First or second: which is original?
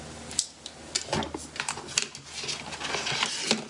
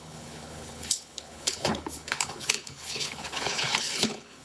first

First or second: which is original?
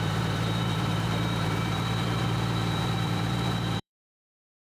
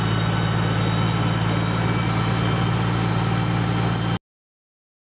second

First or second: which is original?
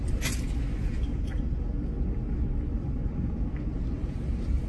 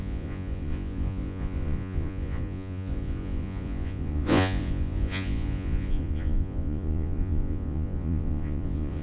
first